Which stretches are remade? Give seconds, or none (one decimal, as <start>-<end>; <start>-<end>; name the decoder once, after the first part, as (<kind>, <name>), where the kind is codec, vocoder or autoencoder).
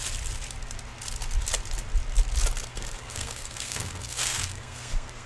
2.7-5.3 (codec, SNAC)